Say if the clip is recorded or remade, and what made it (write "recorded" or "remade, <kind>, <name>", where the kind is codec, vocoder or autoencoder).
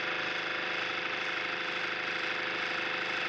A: recorded